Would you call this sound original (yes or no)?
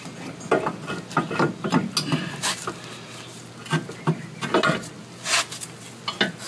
yes